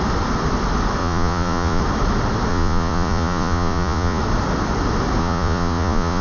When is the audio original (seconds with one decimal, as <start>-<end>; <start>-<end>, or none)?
0.0-1.0; 1.8-2.5; 4.2-5.2